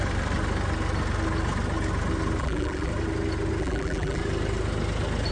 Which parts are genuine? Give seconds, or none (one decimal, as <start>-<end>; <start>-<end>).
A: 0.0-2.4; 2.9-3.6; 4.2-5.3